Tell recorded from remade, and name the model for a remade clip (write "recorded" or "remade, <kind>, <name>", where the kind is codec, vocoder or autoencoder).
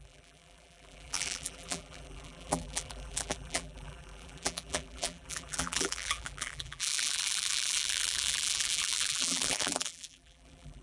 remade, vocoder, BigVGAN v2